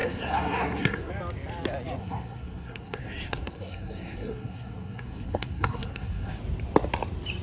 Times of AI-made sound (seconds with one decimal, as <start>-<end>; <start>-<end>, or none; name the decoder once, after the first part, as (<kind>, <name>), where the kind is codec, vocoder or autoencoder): 0.0-1.1 (codec, SNAC); 2.0-6.4